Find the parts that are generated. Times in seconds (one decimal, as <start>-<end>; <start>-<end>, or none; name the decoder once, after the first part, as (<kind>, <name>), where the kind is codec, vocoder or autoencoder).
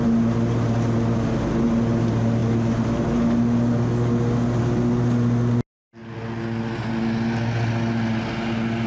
none